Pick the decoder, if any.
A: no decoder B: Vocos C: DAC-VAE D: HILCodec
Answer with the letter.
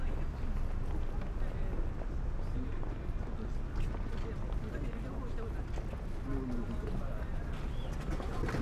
A